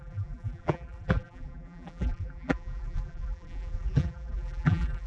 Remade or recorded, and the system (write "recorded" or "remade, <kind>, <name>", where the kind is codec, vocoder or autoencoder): remade, vocoder, BigVGAN v2